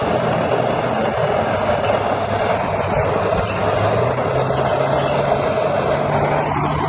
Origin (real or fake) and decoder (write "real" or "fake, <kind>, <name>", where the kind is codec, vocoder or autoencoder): real